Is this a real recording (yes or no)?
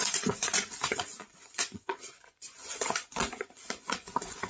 no